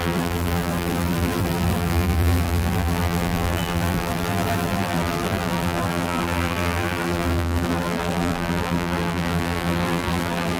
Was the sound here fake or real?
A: fake